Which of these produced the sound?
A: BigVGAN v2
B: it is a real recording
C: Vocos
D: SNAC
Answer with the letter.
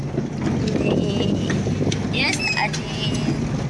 B